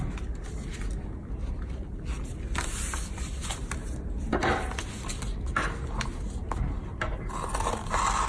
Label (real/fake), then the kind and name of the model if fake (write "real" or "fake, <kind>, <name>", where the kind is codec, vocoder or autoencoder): real